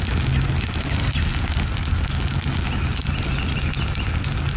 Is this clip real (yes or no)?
yes